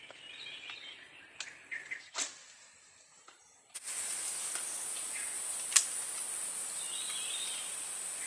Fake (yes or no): no